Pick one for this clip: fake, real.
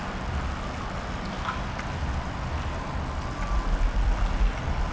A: real